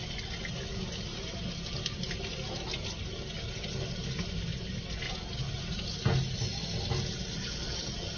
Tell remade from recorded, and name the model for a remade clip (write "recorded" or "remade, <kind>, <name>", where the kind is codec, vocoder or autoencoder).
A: recorded